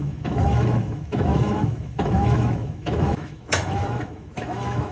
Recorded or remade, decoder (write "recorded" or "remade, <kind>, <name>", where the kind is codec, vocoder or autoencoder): remade, autoencoder, DAC-VAE